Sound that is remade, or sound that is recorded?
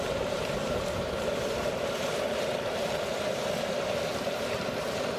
remade